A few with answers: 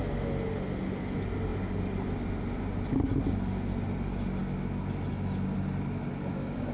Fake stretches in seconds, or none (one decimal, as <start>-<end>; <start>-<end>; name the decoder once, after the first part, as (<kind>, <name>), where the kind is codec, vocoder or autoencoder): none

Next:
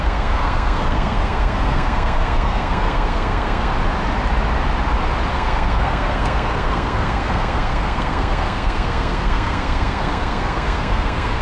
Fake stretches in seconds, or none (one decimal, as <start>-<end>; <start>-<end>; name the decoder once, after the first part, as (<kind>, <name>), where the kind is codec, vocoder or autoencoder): 0.0-3.7 (codec, SNAC); 5.3-11.4

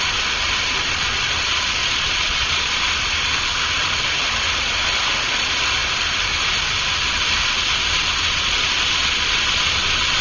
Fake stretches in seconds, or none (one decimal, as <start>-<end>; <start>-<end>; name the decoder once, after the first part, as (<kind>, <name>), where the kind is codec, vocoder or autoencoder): 1.8-2.5 (vocoder, Vocos)

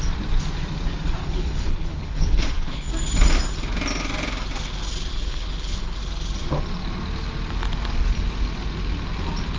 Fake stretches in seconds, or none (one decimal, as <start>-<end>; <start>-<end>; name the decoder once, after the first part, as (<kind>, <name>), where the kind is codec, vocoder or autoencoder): 1.2-2.9 (codec, HILCodec); 5.1-6.0